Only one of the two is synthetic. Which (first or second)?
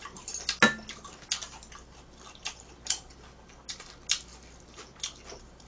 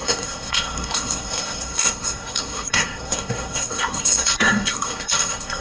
second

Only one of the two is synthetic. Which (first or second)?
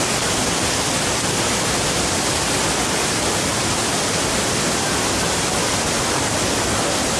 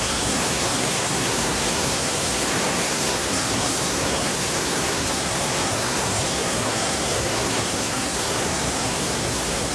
second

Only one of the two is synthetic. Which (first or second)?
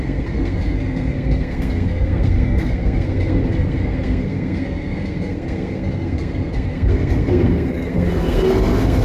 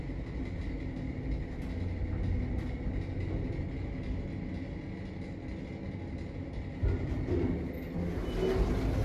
first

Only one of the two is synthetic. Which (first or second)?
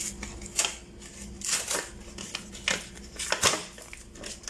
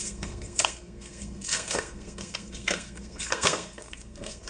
second